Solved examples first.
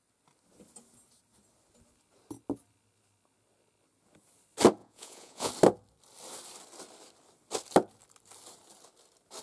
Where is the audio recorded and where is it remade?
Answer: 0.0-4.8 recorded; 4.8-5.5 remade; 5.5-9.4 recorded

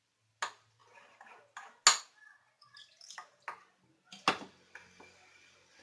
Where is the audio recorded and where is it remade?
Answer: 0.0-5.8 recorded

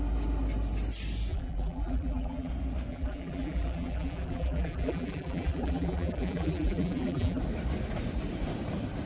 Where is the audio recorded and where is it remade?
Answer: 0.0-1.3 recorded; 1.3-2.5 remade; 2.5-2.9 recorded; 2.9-7.4 remade; 7.4-9.1 recorded

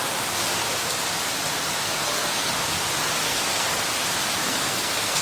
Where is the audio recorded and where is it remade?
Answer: 0.0-1.8 recorded; 1.8-2.5 remade; 2.5-3.2 recorded; 3.2-3.8 remade; 3.8-4.4 recorded; 4.4-5.2 remade